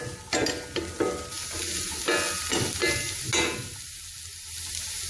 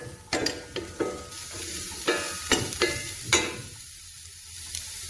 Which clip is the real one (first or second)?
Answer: first